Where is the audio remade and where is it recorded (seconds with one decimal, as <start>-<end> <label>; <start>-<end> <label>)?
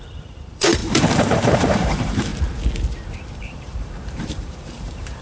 0.0-2.3 remade; 2.3-3.3 recorded; 3.3-5.2 remade